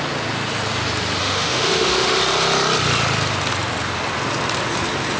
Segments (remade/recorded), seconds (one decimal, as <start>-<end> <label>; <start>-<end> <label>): 0.0-1.2 recorded; 1.2-2.2 remade; 2.2-5.2 recorded